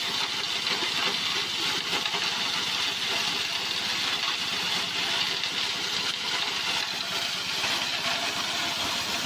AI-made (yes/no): no